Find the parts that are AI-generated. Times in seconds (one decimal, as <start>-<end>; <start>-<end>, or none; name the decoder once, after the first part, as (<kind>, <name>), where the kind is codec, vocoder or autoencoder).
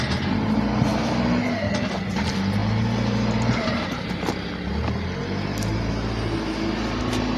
none